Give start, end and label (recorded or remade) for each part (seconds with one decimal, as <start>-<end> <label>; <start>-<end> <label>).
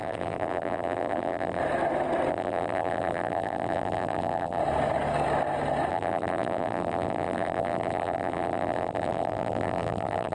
0.0-1.6 remade; 1.6-2.3 recorded; 2.3-4.6 remade; 4.6-5.9 recorded; 5.9-10.3 remade